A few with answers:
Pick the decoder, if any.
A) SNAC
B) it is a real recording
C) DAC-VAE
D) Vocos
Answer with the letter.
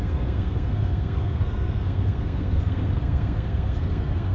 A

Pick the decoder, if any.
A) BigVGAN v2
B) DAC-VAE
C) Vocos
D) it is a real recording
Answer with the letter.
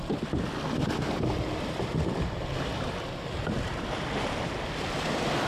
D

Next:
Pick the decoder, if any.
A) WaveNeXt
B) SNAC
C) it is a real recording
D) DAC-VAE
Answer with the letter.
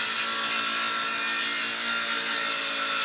C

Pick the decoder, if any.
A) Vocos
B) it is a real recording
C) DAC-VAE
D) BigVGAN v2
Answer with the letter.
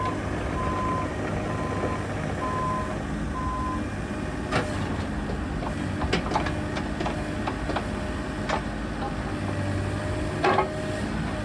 B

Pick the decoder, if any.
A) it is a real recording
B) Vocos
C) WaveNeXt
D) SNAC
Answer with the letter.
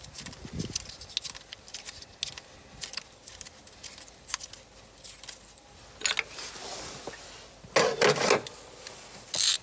A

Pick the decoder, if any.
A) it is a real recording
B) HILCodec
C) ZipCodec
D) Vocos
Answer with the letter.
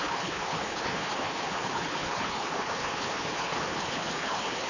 B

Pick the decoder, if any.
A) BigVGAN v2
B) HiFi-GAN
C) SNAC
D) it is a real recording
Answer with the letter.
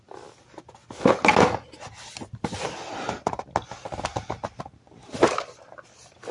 D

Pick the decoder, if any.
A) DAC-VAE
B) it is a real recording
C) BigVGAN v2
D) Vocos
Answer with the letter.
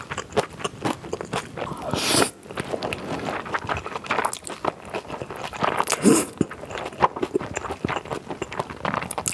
B